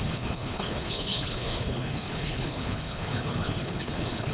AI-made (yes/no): yes